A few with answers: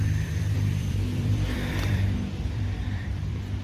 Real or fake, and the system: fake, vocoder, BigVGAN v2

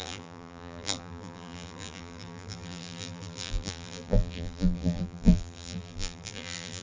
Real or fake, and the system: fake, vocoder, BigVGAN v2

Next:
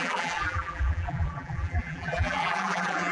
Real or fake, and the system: fake, vocoder, BigVGAN v2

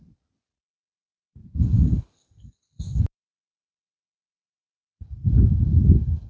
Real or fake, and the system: real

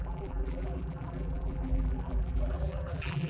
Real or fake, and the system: fake, vocoder, BigVGAN v2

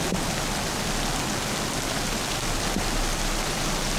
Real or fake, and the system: real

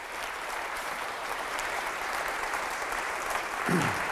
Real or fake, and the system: fake, vocoder, BigVGAN v2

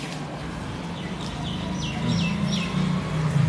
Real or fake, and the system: real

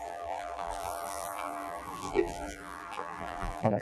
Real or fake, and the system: fake, vocoder, BigVGAN v2